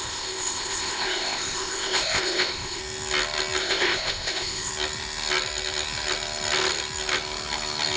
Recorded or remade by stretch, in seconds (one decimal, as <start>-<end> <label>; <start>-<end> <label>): 0.0-2.8 remade; 2.8-3.6 recorded; 3.6-4.7 remade; 4.7-8.0 recorded